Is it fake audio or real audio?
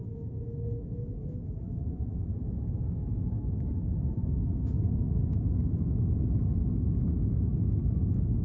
fake